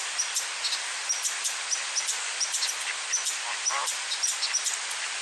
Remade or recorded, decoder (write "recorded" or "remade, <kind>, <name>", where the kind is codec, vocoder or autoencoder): recorded